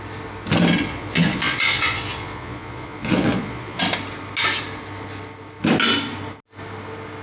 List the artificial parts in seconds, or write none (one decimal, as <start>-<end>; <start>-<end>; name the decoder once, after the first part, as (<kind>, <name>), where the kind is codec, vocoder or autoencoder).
0.8-3.8 (vocoder, Vocos)